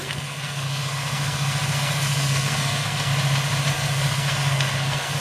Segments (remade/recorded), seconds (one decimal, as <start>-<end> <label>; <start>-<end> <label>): 0.0-3.1 remade; 3.1-3.7 recorded; 3.7-5.2 remade